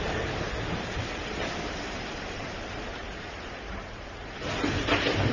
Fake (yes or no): yes